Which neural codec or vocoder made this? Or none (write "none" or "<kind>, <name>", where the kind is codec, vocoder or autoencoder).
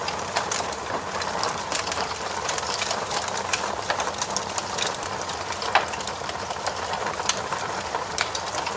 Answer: vocoder, BigVGAN v2